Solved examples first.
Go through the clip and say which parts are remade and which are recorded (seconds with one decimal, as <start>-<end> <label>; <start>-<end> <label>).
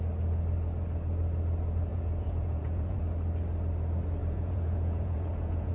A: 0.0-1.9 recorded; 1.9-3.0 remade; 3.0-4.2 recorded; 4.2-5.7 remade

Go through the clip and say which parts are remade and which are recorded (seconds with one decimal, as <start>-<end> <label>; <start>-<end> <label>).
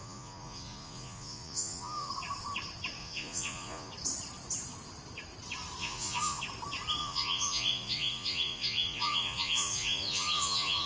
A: 0.0-2.1 remade; 2.1-3.0 recorded; 3.0-3.9 remade; 3.9-5.8 recorded; 5.8-6.4 remade; 6.4-7.0 recorded; 7.0-10.9 remade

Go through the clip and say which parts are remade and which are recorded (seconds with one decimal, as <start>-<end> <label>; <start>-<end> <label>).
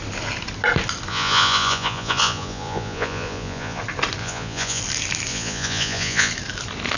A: 0.0-1.1 recorded; 1.1-3.8 remade; 3.8-4.2 recorded; 4.2-4.8 remade; 4.8-5.3 recorded; 5.3-6.3 remade; 6.3-7.0 recorded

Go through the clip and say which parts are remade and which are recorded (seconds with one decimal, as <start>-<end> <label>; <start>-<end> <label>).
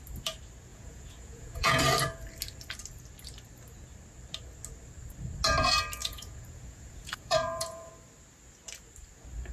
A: 0.0-0.7 recorded; 0.7-1.8 remade; 1.8-6.0 recorded; 6.0-7.9 remade; 7.9-9.5 recorded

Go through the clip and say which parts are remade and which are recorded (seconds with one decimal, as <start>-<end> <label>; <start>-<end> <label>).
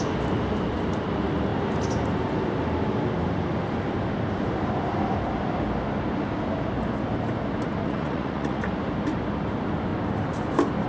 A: 0.0-7.8 recorded; 7.8-8.6 remade; 8.6-10.9 recorded